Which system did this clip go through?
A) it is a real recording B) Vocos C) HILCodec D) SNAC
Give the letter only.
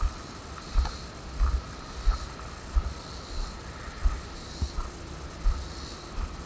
A